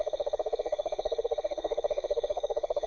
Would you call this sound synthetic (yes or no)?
yes